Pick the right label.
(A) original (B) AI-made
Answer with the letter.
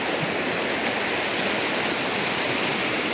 A